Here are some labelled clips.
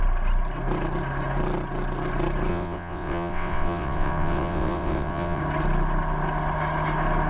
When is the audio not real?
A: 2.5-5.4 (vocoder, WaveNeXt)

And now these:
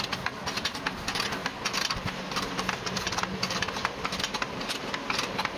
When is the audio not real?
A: none

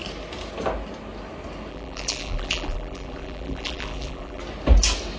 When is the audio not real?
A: 1.7-4.4 (vocoder, BigVGAN v2)

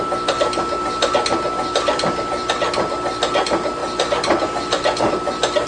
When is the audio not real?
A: none

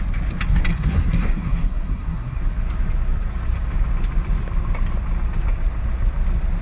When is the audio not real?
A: 0.7-2.4 (codec, SNAC)

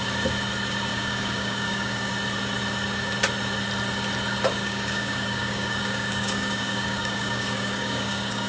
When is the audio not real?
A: 0.9-2.1 (codec, DAC); 4.5-8.5